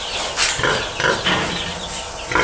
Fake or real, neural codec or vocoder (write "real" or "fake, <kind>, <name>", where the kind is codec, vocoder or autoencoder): real